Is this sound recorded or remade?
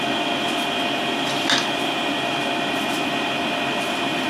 recorded